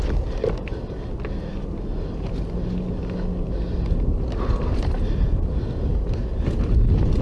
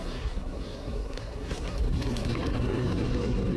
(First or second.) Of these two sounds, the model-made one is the second